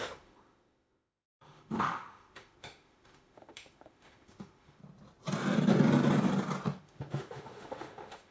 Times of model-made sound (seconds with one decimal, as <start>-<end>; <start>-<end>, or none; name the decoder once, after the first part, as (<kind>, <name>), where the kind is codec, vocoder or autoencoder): 0.0-4.8 (autoencoder, DAC-VAE); 6.8-8.3